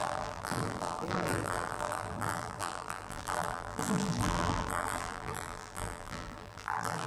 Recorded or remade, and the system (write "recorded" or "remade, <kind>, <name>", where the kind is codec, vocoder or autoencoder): remade, vocoder, BigVGAN v2